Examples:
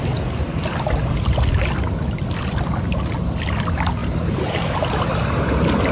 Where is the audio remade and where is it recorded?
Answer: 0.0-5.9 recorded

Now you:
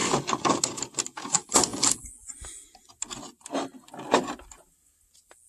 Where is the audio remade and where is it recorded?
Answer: 0.0-0.6 remade; 0.6-5.5 recorded

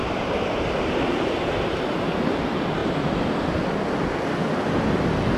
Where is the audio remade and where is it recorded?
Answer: 0.0-2.1 remade; 2.1-5.4 recorded

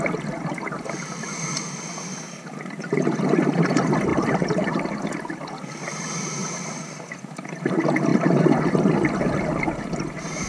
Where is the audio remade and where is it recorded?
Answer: 0.0-4.1 recorded; 4.1-5.0 remade; 5.0-6.4 recorded; 6.4-7.7 remade; 7.7-10.5 recorded

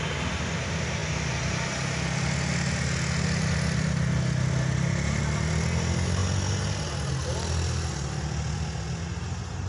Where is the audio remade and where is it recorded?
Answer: 0.0-9.7 recorded